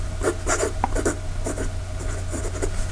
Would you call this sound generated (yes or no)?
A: no